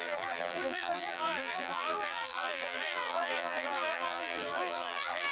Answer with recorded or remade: remade